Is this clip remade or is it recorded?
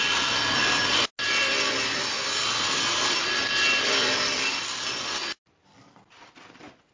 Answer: recorded